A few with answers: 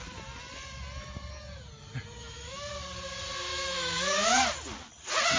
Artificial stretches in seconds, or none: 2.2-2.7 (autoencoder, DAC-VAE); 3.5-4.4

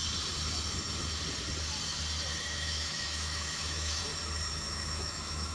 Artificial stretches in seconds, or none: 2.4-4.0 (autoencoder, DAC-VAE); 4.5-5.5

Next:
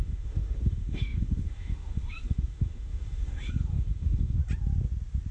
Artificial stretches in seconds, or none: 0.0-4.4 (autoencoder, DAC-VAE)

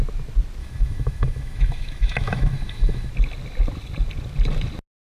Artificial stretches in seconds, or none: 0.6-3.1 (autoencoder, DAC-VAE)

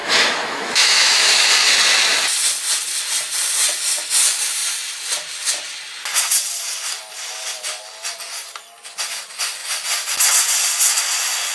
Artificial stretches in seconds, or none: 0.0-1.5 (autoencoder, DAC-VAE)